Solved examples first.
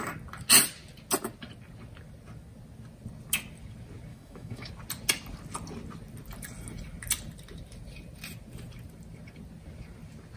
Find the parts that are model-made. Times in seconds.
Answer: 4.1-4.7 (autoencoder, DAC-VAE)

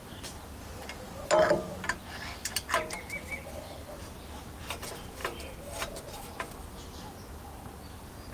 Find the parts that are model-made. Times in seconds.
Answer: none

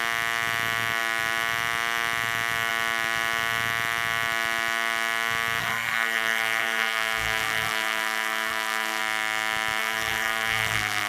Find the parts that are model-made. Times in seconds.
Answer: 5.6-9.0 (codec, SNAC); 9.8-11.1

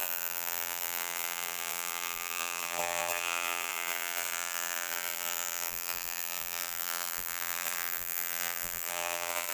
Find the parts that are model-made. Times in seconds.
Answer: 0.0-9.5 (vocoder, BigVGAN v2)

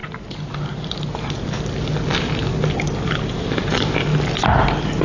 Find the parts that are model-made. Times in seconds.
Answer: 3.0-4.1 (vocoder, BigVGAN v2)

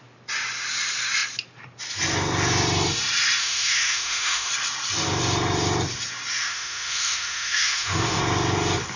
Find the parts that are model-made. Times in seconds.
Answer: 3.4-4.5 (autoencoder, DAC-VAE); 6.4-8.2